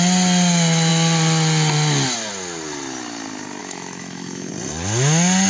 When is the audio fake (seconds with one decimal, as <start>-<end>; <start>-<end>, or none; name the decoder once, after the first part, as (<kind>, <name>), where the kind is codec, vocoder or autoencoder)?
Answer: 3.6-4.5 (autoencoder, DAC-VAE)